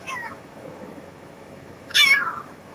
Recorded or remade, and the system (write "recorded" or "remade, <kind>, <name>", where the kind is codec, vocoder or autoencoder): remade, autoencoder, DAC-VAE